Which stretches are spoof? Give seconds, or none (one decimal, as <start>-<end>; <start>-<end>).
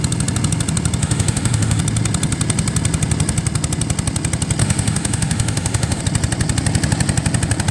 1.0-1.8; 4.6-6.0